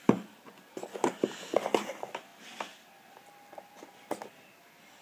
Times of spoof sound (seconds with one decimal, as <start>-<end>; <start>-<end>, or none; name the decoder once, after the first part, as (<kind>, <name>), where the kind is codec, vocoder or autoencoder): none